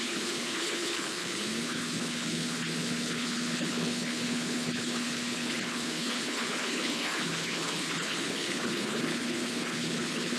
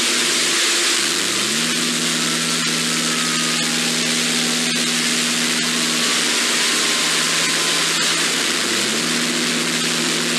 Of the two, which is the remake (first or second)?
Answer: first